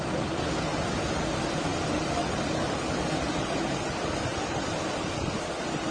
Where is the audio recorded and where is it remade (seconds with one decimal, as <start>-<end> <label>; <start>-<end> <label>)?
0.0-5.9 recorded